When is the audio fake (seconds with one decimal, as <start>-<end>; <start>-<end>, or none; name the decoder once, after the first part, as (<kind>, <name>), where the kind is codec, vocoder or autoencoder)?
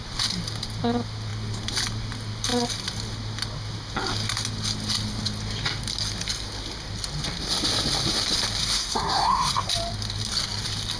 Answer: 8.6-9.7 (codec, SNAC)